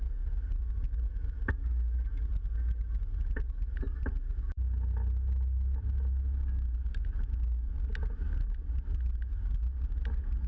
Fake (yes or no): no